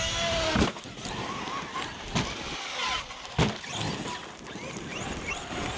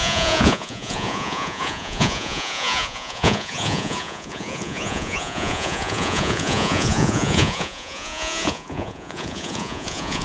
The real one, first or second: first